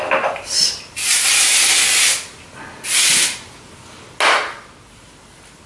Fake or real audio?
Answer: real